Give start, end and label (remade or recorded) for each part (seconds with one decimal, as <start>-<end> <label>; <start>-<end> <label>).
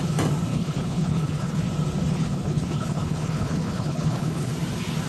0.0-0.5 recorded; 0.5-1.6 remade; 1.6-2.1 recorded; 2.1-4.5 remade; 4.5-5.1 recorded